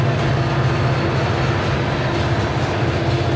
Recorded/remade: recorded